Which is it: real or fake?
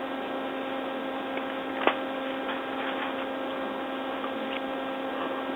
real